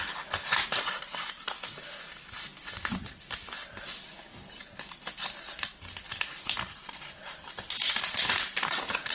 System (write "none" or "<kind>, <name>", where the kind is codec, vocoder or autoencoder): none